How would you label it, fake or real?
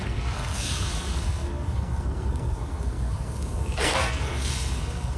fake